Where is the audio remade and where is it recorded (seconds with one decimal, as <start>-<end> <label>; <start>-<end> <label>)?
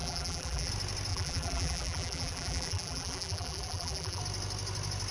0.0-0.7 remade; 0.7-1.1 recorded; 1.1-4.2 remade; 4.2-5.1 recorded